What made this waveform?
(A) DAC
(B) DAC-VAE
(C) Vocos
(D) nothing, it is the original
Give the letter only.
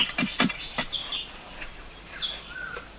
D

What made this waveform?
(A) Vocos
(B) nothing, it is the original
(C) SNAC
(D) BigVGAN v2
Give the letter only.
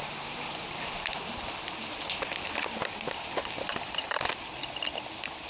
B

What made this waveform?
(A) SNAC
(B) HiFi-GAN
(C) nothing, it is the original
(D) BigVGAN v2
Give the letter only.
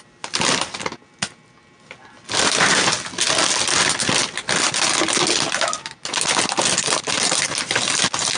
C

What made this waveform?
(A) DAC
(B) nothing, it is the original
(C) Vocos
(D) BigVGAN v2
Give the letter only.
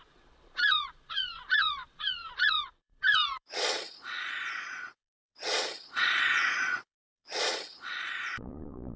C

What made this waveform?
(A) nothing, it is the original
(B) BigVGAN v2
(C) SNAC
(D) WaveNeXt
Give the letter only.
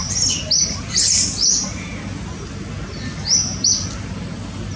A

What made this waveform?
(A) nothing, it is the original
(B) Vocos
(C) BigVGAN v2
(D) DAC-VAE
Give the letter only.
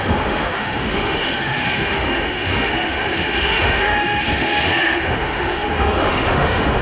D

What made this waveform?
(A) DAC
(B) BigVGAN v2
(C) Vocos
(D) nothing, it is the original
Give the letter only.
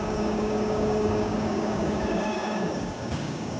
A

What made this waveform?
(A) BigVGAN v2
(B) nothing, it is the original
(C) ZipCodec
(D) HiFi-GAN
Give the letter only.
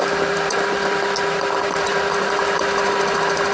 A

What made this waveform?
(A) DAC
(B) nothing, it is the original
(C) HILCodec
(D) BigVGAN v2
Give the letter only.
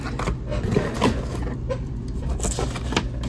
B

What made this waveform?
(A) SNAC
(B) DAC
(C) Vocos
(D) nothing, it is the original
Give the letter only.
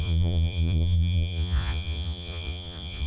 C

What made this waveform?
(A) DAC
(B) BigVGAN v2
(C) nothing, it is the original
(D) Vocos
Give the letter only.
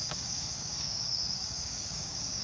A